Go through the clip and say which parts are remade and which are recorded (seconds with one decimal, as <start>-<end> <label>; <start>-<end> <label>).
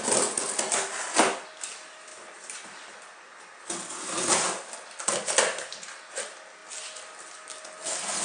0.0-8.2 recorded